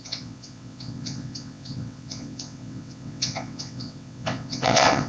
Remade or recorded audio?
remade